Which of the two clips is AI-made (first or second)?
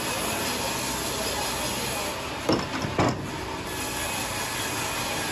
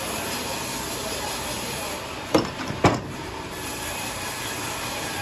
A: second